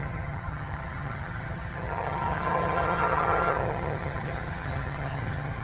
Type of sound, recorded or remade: remade